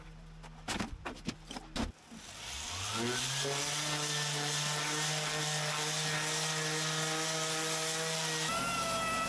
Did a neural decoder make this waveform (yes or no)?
no